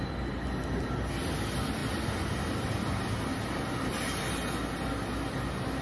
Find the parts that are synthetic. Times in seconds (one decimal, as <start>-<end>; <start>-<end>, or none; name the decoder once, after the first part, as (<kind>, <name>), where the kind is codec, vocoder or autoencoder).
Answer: none